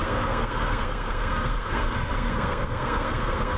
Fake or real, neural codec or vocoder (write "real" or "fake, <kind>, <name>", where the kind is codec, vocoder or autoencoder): fake, codec, SNAC